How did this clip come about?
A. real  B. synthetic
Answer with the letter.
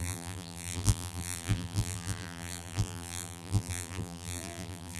B